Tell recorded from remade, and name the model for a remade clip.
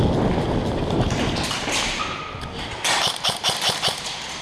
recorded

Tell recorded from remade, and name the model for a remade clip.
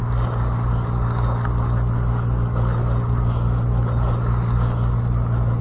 recorded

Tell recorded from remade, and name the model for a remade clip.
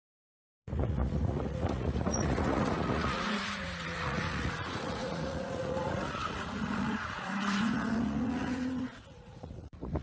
remade, vocoder, Vocos